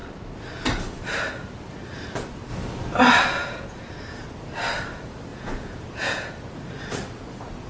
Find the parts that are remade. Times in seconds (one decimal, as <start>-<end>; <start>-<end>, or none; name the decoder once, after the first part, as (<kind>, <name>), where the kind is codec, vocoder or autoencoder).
3.4-3.9 (vocoder, Vocos); 5.3-6.3